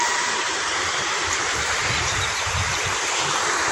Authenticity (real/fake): fake